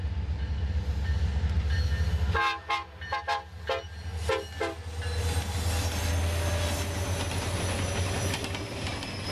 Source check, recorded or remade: recorded